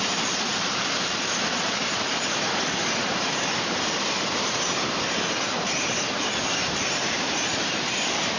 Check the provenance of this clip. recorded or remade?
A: remade